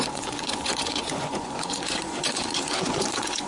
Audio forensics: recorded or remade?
remade